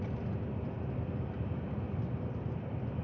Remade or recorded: recorded